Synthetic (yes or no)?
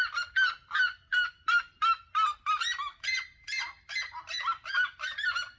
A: no